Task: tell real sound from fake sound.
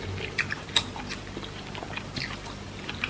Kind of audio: fake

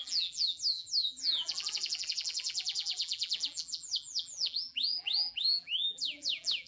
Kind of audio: fake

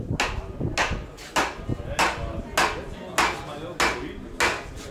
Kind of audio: real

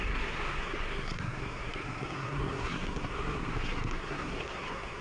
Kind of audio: fake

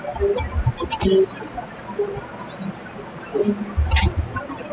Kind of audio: real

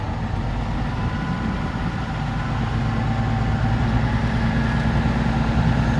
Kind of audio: real